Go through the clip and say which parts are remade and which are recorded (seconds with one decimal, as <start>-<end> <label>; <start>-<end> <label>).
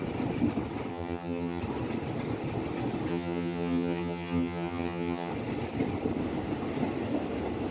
0.0-0.9 recorded; 0.9-1.6 remade; 1.6-3.1 recorded; 3.1-5.3 remade; 5.3-7.7 recorded